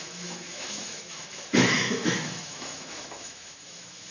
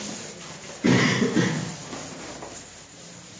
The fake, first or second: first